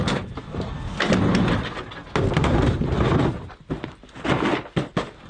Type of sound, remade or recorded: recorded